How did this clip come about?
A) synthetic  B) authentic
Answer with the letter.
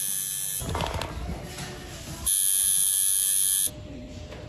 B